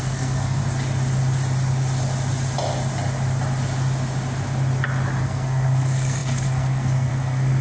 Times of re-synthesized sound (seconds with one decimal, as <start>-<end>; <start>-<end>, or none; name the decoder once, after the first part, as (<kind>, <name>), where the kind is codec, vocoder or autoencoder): 0.0-0.6 (codec, SNAC); 5.2-7.6